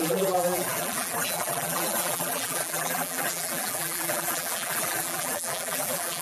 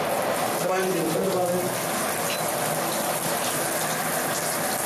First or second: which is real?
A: second